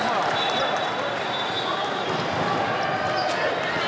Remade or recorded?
recorded